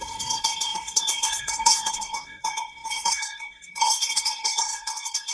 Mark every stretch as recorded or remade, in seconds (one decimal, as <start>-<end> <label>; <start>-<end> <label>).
0.0-5.3 remade